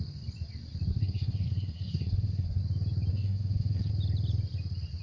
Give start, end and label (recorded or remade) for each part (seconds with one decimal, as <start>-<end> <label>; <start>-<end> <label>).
0.0-0.9 recorded; 0.9-2.6 remade; 2.6-3.1 recorded; 3.1-3.9 remade; 3.9-5.0 recorded

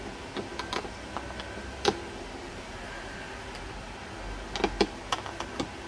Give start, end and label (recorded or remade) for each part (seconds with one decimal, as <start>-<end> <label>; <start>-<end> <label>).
0.0-5.9 recorded

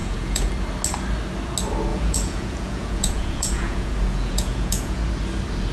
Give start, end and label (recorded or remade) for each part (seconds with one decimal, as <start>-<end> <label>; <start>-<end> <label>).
0.0-0.5 remade; 0.5-1.9 recorded; 1.9-5.0 remade; 5.0-5.7 recorded

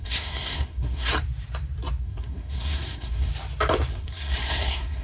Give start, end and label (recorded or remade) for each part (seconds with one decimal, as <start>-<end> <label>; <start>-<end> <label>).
0.0-1.1 remade; 1.1-2.0 recorded; 2.0-3.3 remade; 3.3-3.9 recorded; 3.9-5.0 remade